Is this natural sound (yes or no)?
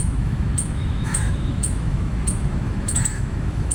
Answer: no